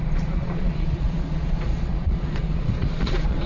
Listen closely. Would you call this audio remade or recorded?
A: remade